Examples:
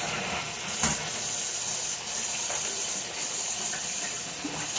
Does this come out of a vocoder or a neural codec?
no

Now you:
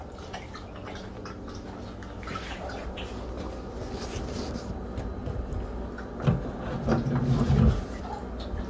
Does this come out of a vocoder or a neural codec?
no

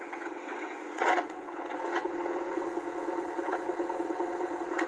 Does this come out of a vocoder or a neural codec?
yes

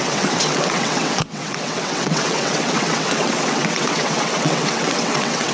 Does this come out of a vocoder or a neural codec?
yes